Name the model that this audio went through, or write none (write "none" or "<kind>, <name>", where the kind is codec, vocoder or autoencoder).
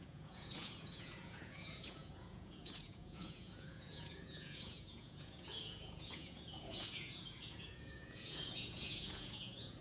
vocoder, Vocos